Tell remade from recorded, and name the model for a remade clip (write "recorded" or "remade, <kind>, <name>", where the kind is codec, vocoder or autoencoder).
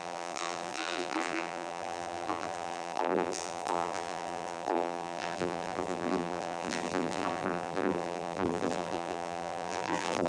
remade, vocoder, BigVGAN v2